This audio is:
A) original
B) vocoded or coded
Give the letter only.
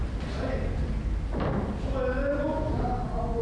A